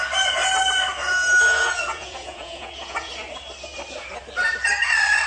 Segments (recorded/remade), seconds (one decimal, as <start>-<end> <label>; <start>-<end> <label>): 0.0-1.5 recorded; 1.5-3.1 remade; 3.1-5.3 recorded